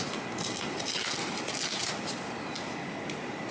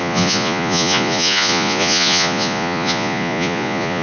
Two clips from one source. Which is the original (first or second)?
first